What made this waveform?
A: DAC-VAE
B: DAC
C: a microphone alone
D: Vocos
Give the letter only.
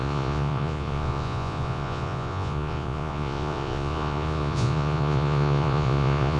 D